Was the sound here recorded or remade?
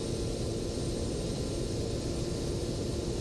recorded